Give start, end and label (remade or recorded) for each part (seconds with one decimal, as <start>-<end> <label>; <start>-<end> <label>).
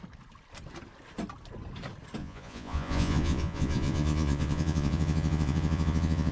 0.0-2.2 recorded; 2.2-6.3 remade